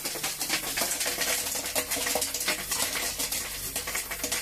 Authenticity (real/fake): real